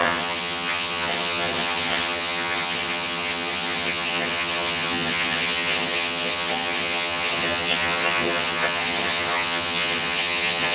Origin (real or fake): fake